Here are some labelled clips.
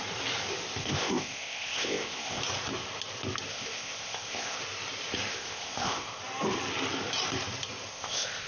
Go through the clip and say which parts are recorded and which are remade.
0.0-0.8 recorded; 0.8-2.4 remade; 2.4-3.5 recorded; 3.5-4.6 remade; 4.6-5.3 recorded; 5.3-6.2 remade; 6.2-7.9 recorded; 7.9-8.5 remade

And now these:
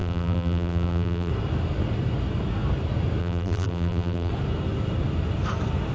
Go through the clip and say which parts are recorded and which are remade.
0.0-1.3 remade; 1.3-3.2 recorded; 3.2-4.3 remade; 4.3-5.9 recorded

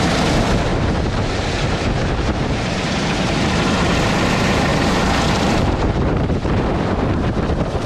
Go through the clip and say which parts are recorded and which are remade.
0.0-0.7 recorded; 0.7-3.2 remade; 3.2-4.7 recorded; 4.7-6.6 remade; 6.6-7.9 recorded

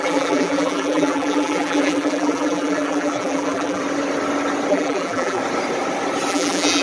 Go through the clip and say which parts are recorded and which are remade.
0.0-3.8 remade; 3.8-4.7 recorded; 4.7-5.4 remade; 5.4-6.3 recorded; 6.3-6.8 remade

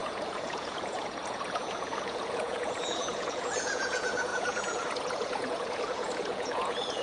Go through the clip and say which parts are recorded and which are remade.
0.0-7.0 remade